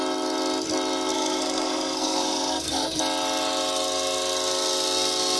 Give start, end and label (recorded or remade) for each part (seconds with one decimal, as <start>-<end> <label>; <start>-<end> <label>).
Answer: 0.0-1.1 recorded; 1.1-3.0 remade; 3.0-5.4 recorded